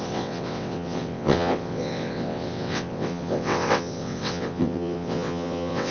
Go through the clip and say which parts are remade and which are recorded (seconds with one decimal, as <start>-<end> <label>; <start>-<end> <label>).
0.0-5.9 remade